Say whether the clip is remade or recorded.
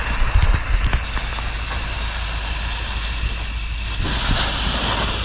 recorded